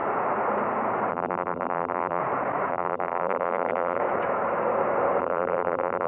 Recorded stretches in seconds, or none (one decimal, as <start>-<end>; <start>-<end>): 0.0-1.1; 2.2-2.7; 4.0-5.2